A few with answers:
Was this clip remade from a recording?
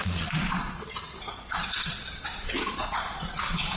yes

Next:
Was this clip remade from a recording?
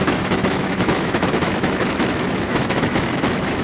yes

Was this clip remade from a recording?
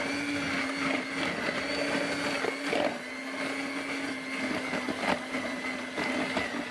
no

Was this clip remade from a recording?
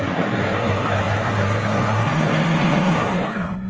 yes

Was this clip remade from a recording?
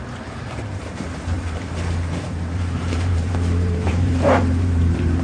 yes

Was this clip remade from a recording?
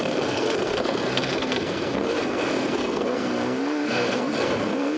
yes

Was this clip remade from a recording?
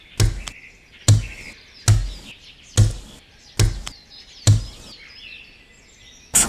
no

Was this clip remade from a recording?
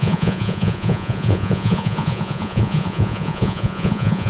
yes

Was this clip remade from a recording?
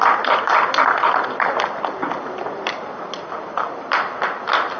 no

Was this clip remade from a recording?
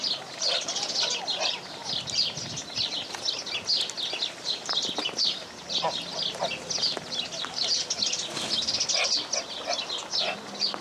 no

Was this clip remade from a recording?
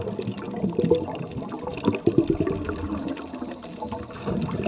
no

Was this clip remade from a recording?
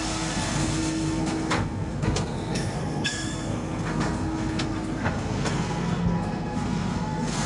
yes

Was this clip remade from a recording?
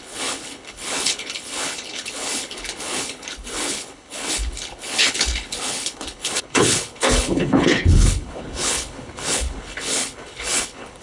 yes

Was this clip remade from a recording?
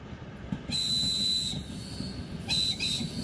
no